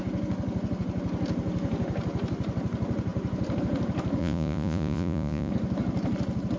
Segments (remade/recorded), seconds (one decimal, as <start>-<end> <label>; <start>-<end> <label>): 0.0-4.2 recorded; 4.2-5.5 remade; 5.5-6.6 recorded